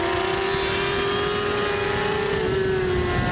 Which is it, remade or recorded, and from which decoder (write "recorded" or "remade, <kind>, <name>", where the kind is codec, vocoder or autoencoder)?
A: recorded